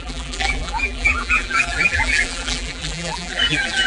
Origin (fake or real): fake